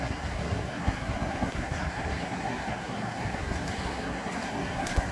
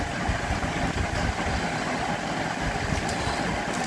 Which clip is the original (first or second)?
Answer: second